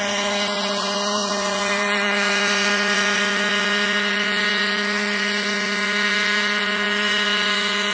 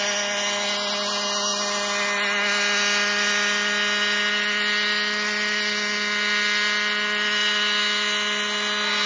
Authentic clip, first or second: second